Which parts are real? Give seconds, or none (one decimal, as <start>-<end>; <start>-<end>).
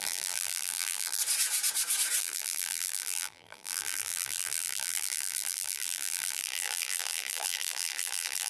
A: 1.2-2.2